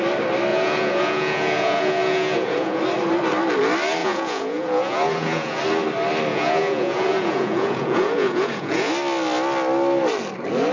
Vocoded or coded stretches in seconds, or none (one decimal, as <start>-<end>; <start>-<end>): 0.5-2.8; 4.0-5.6; 6.3-8.9